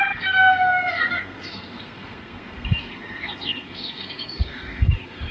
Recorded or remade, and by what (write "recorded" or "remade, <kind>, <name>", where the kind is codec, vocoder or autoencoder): remade, codec, SNAC